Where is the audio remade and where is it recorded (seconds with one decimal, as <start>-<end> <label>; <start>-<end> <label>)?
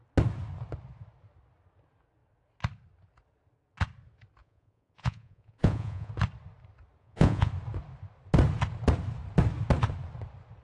0.0-4.4 recorded; 4.4-6.1 remade; 6.1-7.0 recorded; 7.0-7.5 remade; 7.5-10.6 recorded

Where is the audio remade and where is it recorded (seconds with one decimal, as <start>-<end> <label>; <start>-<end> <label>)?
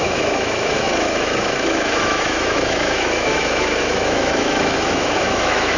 0.0-5.8 remade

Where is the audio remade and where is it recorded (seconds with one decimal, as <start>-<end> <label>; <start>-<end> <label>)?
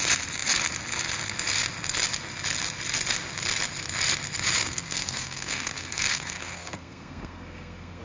0.0-4.6 recorded; 4.6-8.0 remade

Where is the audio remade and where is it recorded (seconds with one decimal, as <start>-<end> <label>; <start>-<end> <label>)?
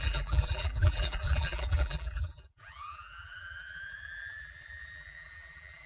0.0-5.9 remade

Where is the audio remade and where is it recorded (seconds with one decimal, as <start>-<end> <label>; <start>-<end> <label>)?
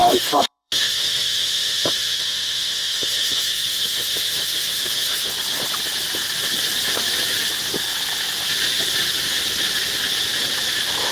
0.0-5.3 remade; 5.3-11.1 recorded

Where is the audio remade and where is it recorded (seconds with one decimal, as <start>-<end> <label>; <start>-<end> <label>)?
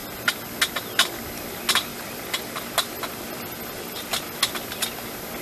0.0-1.9 recorded; 1.9-4.3 remade; 4.3-5.4 recorded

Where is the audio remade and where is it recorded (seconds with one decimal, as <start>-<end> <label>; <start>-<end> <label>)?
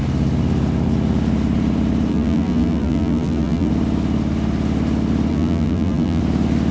0.0-2.1 recorded; 2.1-3.7 remade; 3.7-5.3 recorded; 5.3-6.2 remade; 6.2-6.7 recorded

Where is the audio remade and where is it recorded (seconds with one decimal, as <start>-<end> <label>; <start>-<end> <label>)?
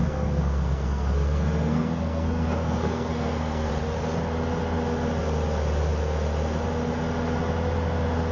0.0-3.7 remade; 3.7-8.3 recorded